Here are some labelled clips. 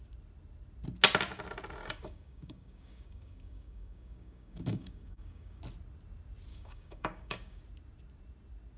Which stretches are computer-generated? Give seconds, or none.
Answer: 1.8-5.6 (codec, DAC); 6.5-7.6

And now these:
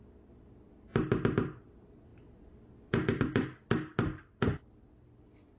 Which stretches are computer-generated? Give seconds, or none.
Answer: none

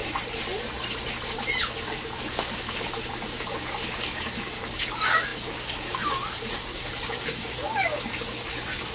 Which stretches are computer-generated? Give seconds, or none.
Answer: 1.6-8.9 (codec, DAC)

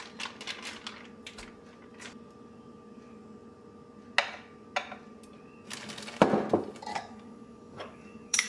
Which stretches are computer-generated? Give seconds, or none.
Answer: 6.9-8.5 (codec, DAC)